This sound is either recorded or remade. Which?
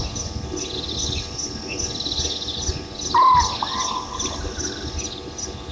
recorded